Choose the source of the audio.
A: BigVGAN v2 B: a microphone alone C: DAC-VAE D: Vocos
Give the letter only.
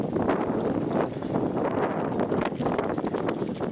B